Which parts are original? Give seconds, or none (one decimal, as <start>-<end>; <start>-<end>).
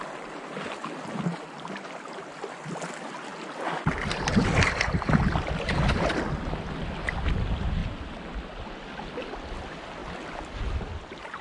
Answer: 0.0-11.4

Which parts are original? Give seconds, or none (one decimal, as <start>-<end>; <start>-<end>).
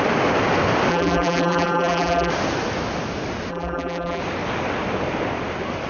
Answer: 0.0-0.9; 2.3-3.5; 4.2-5.9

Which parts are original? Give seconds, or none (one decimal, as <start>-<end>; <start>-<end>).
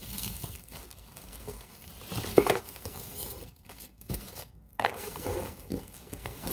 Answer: 1.9-2.3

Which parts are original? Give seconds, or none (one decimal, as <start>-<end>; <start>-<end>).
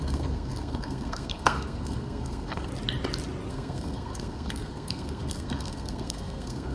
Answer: 2.7-3.5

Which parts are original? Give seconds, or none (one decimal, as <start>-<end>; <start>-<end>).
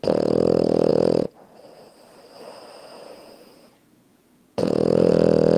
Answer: 0.0-0.9; 1.9-2.9; 5.1-5.6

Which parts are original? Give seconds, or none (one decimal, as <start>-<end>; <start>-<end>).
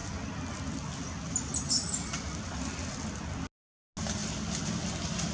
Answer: 0.0-5.3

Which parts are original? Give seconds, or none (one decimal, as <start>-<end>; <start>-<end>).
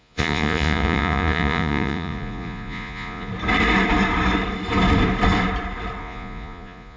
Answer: 3.3-6.0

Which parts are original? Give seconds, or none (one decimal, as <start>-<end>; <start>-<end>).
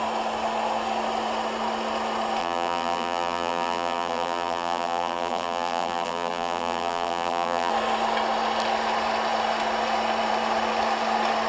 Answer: 0.0-2.4; 7.7-11.5